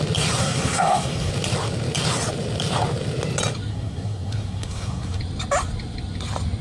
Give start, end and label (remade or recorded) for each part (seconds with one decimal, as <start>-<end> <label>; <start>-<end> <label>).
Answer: 0.0-0.4 recorded; 0.4-1.3 remade; 1.3-3.7 recorded; 3.7-5.2 remade; 5.2-6.6 recorded